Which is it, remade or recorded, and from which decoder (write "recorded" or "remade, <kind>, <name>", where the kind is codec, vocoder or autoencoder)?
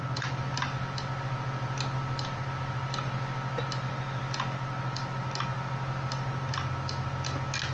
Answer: recorded